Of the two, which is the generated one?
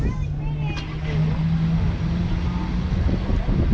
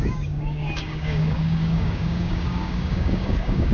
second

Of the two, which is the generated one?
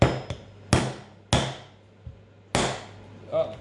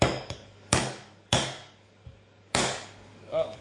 second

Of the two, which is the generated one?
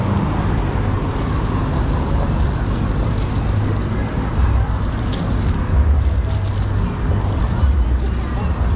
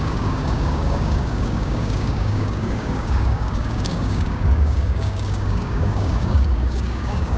second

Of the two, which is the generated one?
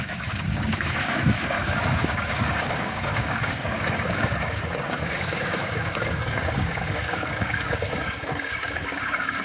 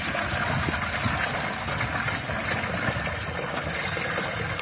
first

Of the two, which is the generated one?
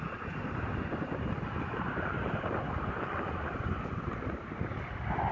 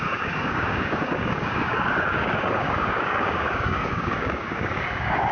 second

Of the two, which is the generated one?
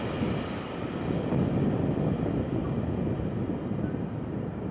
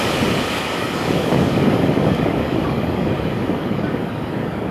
second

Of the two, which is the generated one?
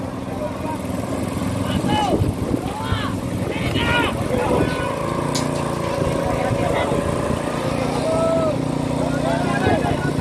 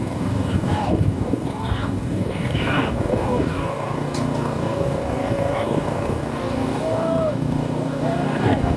second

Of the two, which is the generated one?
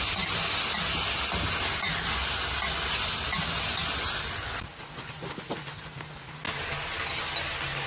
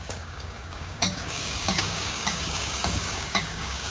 second